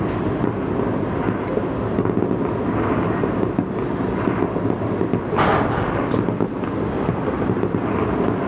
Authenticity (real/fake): real